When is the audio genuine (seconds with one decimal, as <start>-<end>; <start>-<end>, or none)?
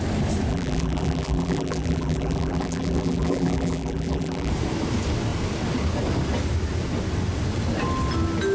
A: 0.0-0.5; 4.5-8.5